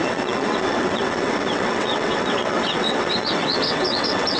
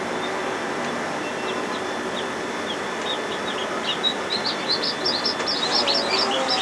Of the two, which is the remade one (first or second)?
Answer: first